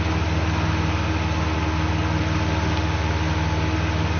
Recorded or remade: recorded